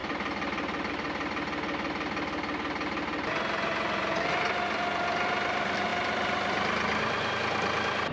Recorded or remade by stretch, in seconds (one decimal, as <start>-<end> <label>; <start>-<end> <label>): 0.0-8.1 recorded